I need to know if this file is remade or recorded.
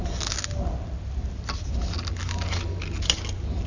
recorded